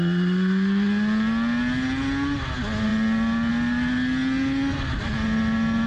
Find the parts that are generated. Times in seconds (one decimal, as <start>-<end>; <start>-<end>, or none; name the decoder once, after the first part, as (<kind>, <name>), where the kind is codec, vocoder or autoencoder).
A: none